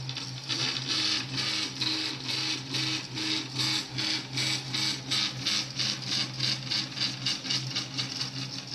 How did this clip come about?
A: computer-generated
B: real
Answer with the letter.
B